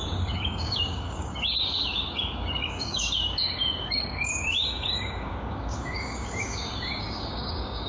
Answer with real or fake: fake